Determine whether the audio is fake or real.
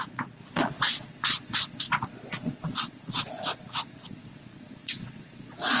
fake